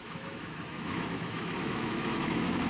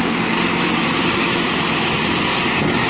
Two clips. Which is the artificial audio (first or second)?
first